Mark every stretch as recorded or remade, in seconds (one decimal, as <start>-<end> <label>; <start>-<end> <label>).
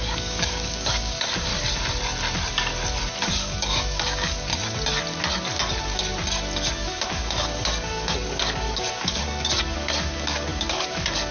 0.0-1.5 remade; 1.5-3.2 recorded; 3.2-4.5 remade; 4.5-6.7 recorded; 6.7-11.3 remade